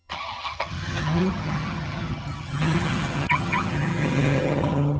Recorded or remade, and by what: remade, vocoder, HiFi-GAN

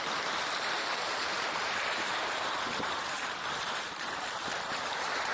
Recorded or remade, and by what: remade, vocoder, BigVGAN v2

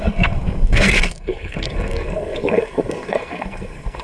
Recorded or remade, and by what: remade, codec, SNAC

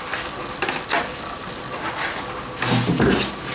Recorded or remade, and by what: recorded